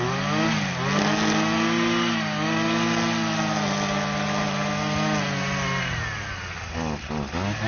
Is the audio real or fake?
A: real